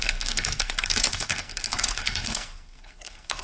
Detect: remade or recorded remade